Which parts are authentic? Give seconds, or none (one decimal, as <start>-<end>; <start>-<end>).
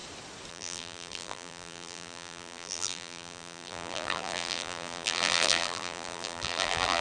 0.0-0.5